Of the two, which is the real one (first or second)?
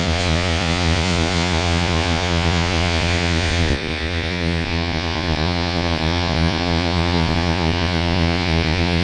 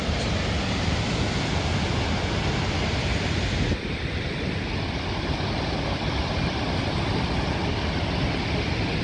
second